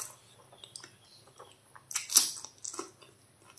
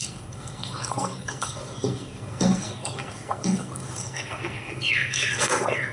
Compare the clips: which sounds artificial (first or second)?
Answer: second